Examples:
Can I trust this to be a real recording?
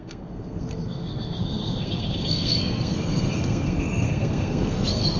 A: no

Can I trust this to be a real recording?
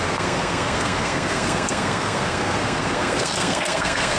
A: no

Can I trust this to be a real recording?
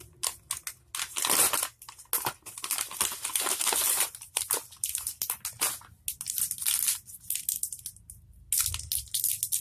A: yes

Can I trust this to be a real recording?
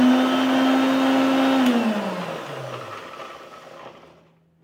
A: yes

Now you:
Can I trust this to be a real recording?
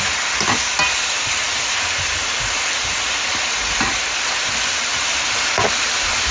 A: yes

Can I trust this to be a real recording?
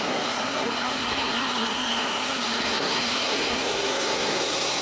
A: no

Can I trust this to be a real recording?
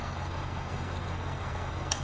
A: no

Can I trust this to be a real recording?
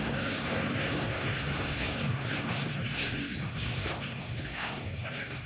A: no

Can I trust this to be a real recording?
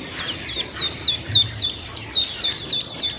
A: yes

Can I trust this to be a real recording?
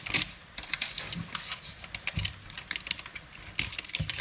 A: yes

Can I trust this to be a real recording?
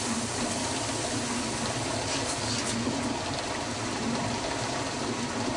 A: yes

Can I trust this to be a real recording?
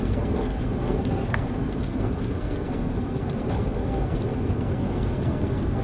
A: no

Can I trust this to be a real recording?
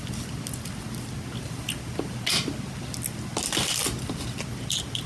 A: yes